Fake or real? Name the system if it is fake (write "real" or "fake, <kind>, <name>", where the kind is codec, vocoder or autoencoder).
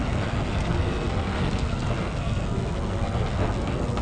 fake, codec, SNAC